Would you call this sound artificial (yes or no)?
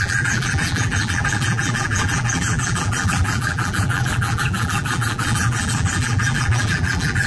yes